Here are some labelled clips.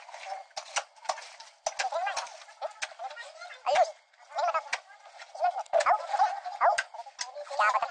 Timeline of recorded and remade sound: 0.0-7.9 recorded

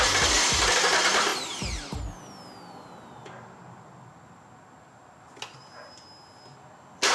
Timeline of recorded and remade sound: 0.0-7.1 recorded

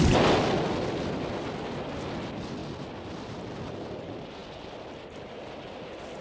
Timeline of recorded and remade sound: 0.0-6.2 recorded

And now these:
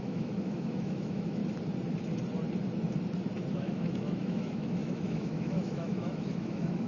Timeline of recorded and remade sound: 0.0-1.4 remade; 1.4-3.5 recorded; 3.5-6.9 remade

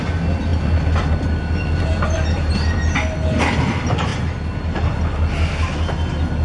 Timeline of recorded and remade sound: 0.0-6.4 recorded